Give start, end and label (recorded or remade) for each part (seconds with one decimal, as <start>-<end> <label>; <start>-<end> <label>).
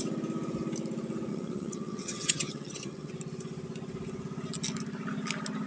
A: 0.0-1.3 recorded; 1.3-3.1 remade; 3.1-5.7 recorded